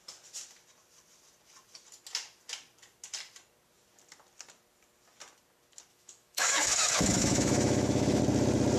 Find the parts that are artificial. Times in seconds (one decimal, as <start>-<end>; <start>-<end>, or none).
5.9-8.2